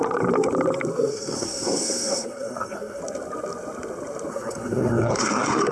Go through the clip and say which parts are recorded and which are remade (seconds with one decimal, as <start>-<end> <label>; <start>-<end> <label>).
0.0-1.1 recorded; 1.1-3.0 remade; 3.0-4.3 recorded; 4.3-5.7 remade